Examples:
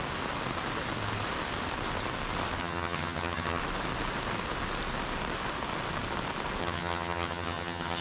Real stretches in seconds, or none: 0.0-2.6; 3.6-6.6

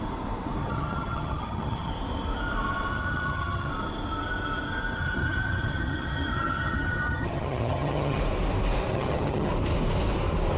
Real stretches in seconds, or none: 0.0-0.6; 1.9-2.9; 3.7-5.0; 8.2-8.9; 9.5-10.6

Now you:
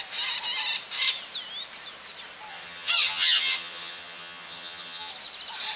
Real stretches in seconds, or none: 0.0-2.5; 5.1-5.8

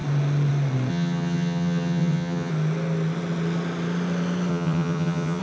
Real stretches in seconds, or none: 0.0-0.9; 2.5-4.5

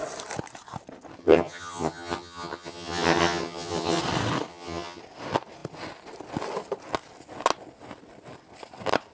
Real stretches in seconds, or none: 0.0-1.2; 4.0-4.5; 5.0-9.1

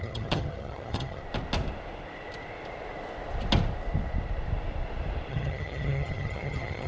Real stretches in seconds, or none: 1.2-5.3